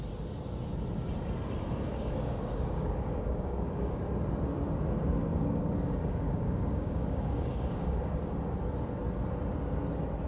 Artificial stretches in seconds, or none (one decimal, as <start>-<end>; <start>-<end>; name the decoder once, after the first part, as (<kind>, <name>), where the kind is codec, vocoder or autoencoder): 1.9-4.0 (codec, DAC); 5.3-8.4